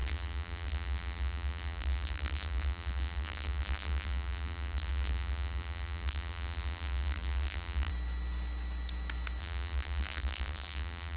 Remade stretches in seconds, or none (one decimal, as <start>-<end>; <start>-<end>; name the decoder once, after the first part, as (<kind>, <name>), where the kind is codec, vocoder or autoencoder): 0.0-7.9 (vocoder, BigVGAN v2); 9.4-11.2

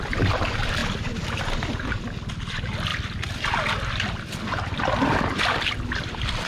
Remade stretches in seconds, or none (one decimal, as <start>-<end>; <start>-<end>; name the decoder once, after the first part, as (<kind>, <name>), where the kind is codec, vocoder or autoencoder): none

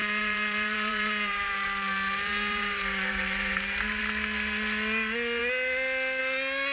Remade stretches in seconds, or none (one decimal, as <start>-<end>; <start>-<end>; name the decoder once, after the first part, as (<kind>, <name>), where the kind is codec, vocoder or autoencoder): 0.0-4.0 (vocoder, BigVGAN v2)

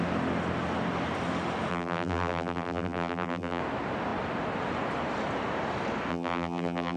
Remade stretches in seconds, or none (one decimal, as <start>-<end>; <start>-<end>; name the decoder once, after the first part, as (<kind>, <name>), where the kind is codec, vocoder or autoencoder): 1.7-3.6 (vocoder, BigVGAN v2); 6.1-7.0

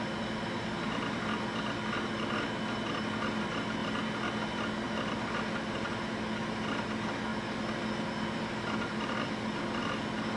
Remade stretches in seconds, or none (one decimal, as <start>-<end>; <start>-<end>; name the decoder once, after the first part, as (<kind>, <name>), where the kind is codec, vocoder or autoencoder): 0.0-3.8 (vocoder, BigVGAN v2); 6.1-7.3; 8.6-10.4

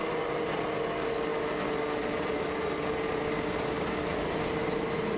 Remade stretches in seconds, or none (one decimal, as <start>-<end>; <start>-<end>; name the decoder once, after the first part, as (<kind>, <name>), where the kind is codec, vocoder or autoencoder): none